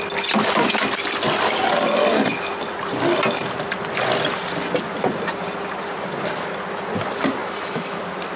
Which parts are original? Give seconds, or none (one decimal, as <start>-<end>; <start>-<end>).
0.0-7.4; 8.0-8.4